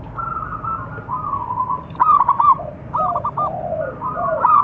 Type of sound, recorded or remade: remade